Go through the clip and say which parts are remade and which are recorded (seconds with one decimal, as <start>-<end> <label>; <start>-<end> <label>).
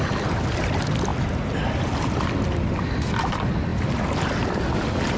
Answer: 0.0-5.2 recorded